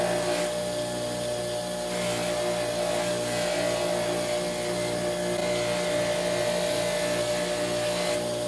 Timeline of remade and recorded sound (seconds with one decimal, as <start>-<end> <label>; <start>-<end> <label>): 0.0-8.5 recorded